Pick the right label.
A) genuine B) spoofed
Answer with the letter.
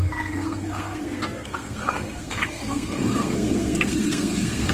B